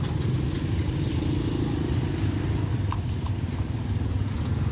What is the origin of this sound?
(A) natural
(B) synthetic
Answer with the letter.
A